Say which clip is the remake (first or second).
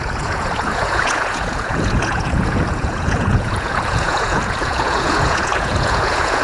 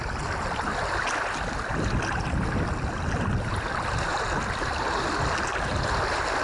first